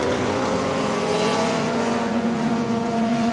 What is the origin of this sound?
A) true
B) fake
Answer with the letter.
B